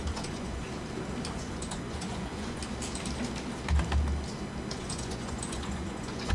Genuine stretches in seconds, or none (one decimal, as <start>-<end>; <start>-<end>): 0.6-1.3; 2.6-4.7

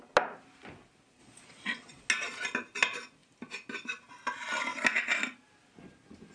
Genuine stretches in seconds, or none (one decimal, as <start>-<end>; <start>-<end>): 0.0-1.2; 2.1-6.3

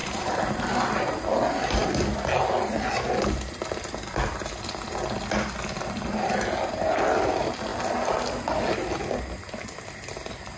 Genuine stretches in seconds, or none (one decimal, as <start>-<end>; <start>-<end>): 0.5-10.6

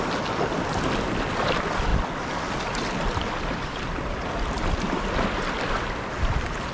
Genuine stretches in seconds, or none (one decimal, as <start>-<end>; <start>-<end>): 0.0-6.7

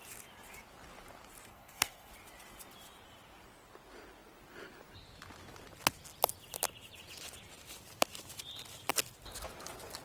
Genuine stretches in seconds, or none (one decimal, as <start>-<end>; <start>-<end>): 0.0-1.5; 2.1-10.0

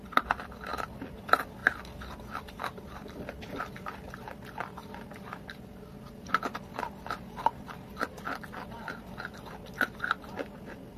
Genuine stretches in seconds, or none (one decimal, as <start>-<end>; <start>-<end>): 0.0-11.0